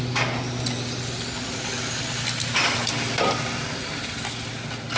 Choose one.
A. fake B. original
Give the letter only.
B